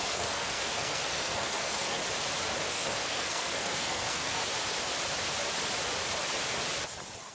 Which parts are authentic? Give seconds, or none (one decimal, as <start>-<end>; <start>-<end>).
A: 2.0-2.7; 4.4-7.3